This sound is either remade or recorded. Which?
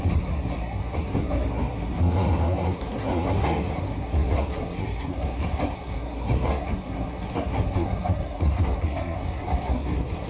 remade